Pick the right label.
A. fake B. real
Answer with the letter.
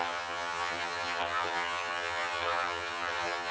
A